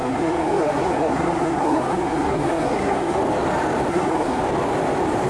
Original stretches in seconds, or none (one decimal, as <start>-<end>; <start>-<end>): 3.2-3.9; 4.4-5.3